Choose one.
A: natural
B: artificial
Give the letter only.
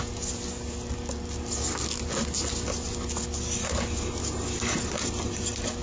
A